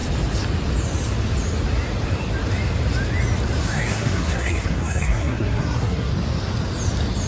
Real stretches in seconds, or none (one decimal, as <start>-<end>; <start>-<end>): 0.0-3.6; 6.1-7.3